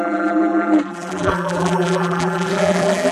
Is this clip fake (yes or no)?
yes